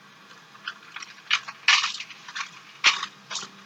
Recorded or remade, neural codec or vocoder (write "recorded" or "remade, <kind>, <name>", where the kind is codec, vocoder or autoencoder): recorded